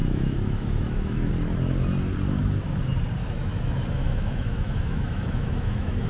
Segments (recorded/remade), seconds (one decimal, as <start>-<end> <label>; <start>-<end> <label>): 0.0-1.3 remade; 1.3-3.2 recorded; 3.2-6.1 remade

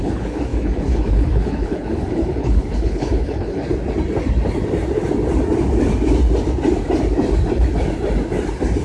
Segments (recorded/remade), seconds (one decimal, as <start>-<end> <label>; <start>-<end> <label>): 0.0-3.6 remade; 3.6-8.8 recorded

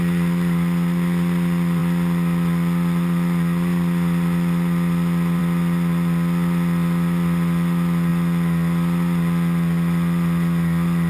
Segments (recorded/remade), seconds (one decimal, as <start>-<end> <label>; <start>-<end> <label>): 0.0-11.1 recorded

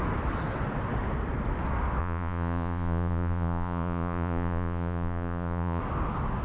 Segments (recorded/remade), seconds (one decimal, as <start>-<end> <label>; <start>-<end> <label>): 0.0-2.0 recorded; 2.0-5.8 remade; 5.8-6.4 recorded

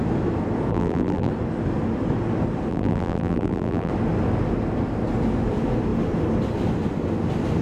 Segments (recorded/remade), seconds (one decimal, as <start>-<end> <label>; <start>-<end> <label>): 0.0-0.7 recorded; 0.7-1.3 remade; 1.3-2.7 recorded; 2.7-3.9 remade; 3.9-7.6 recorded

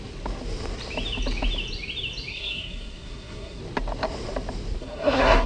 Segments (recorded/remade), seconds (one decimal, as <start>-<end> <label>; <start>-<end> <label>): 0.0-2.3 recorded; 2.3-3.6 remade; 3.6-4.8 recorded; 4.8-5.5 remade

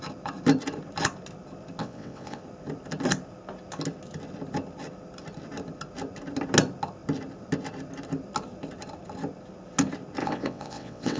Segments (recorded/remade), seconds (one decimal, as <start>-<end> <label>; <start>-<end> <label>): 0.0-1.8 recorded; 1.8-2.4 remade; 2.4-10.2 recorded; 10.2-11.2 remade